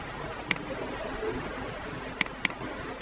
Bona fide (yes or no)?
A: yes